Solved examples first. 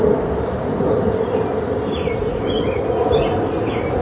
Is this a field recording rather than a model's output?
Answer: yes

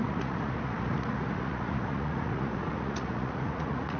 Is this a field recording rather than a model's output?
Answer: no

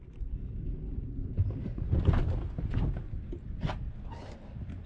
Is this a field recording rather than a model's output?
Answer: yes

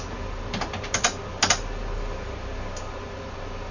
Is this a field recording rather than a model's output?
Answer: yes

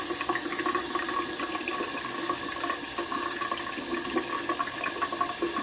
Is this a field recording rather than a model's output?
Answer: yes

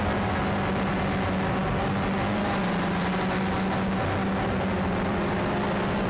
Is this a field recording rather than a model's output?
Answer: yes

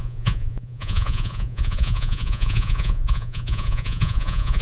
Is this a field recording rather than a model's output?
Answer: no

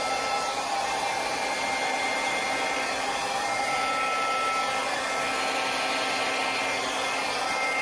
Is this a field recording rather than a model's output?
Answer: yes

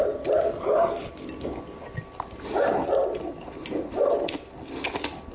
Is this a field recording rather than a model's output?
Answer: yes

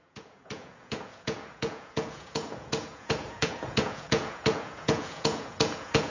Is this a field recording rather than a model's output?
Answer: no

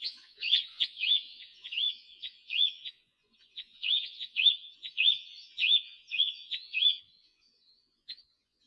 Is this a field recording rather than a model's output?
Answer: no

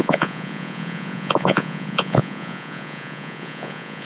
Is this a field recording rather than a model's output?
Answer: no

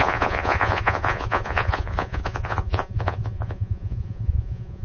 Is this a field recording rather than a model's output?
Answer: no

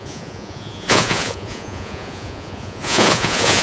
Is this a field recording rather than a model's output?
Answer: no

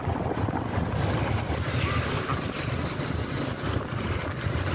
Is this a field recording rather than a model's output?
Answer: yes